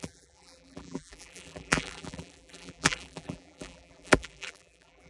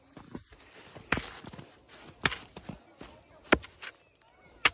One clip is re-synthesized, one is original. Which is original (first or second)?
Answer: second